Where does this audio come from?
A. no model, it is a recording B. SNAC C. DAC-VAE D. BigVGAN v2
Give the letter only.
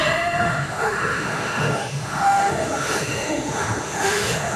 C